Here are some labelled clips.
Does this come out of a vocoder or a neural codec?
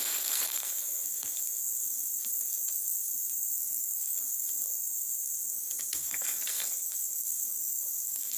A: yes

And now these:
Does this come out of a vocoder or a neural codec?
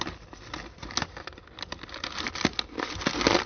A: no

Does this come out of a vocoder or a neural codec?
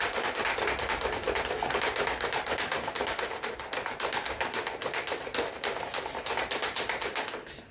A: no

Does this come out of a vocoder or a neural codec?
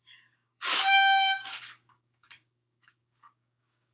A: yes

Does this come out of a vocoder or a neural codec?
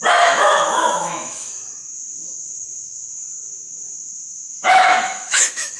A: yes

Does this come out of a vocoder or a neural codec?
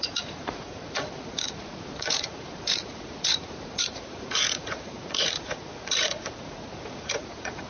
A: yes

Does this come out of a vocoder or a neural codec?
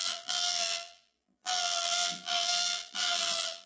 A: yes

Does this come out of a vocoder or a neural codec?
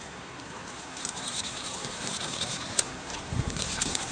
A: yes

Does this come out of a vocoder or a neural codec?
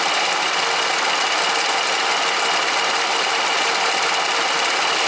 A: no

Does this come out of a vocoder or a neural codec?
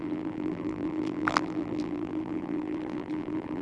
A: yes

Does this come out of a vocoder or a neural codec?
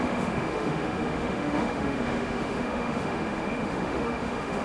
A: yes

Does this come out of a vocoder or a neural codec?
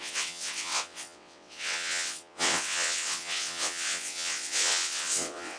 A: yes